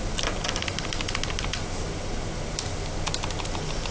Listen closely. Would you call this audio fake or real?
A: real